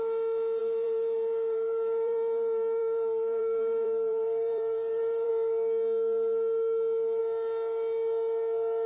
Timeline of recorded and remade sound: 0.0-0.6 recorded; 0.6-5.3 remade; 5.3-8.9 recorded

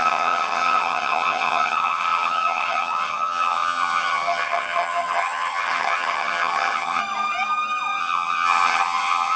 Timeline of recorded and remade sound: 0.0-7.0 remade; 7.0-8.0 recorded; 8.0-9.4 remade

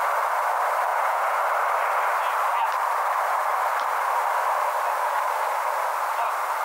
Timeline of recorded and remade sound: 0.0-0.9 recorded; 0.9-1.4 remade; 1.4-6.6 recorded

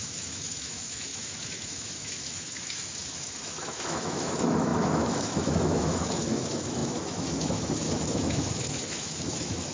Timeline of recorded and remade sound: 0.0-9.7 remade

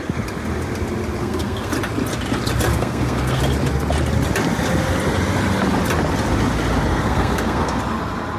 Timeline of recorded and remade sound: 0.0-1.2 recorded; 1.2-1.7 remade; 1.7-2.7 recorded; 2.7-3.4 remade; 3.4-6.9 recorded; 6.9-7.8 remade; 7.8-8.4 recorded

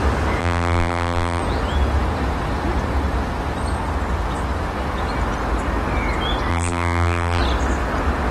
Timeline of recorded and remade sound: 0.0-0.4 recorded; 0.4-1.4 remade; 1.4-6.5 recorded; 6.5-7.4 remade; 7.4-8.3 recorded